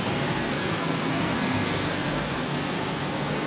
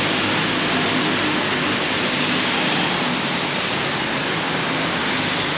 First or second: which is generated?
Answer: first